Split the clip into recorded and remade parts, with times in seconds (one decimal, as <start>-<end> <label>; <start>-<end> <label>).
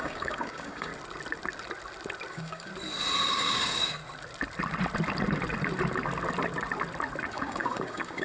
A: 0.0-0.9 remade; 0.9-2.3 recorded; 2.3-2.7 remade; 2.7-3.2 recorded; 3.2-4.0 remade; 4.0-7.3 recorded; 7.3-8.2 remade